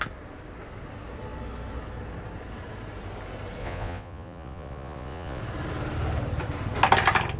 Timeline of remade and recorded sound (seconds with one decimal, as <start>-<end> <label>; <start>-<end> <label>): 0.0-3.6 recorded; 3.6-5.4 remade; 5.4-7.4 recorded